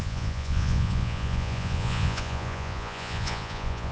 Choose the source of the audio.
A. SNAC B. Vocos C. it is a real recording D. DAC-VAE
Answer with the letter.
B